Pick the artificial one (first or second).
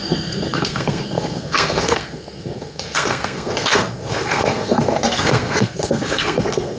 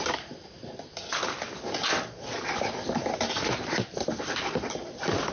first